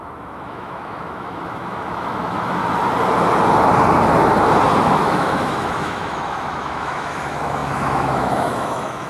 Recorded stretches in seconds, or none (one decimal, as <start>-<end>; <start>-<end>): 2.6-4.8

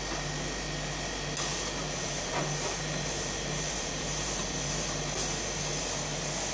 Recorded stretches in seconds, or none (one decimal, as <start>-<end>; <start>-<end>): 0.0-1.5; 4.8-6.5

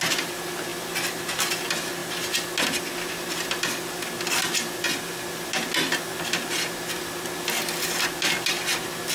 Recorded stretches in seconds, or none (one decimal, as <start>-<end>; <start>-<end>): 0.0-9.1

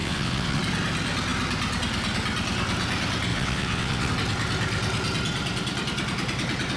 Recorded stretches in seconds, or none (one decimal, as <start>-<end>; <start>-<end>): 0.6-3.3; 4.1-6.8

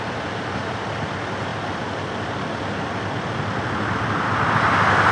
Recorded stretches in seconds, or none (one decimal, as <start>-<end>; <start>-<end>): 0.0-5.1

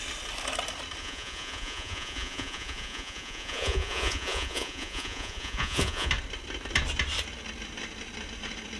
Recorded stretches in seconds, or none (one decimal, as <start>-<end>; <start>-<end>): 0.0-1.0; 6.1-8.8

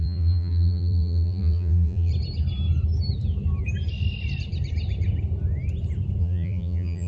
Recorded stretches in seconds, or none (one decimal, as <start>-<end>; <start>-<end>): 2.1-6.2

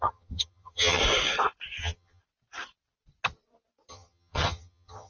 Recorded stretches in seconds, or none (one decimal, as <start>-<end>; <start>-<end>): 1.0-1.8; 2.2-3.9